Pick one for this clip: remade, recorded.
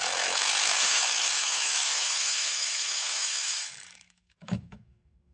remade